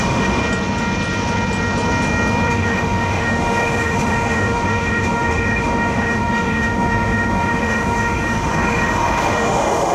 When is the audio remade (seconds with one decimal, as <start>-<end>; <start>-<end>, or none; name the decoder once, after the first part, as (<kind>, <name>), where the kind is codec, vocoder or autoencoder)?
0.0-0.4 (autoencoder, DAC-VAE); 2.5-9.9